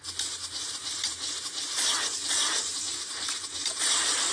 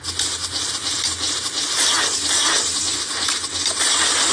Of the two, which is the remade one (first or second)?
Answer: first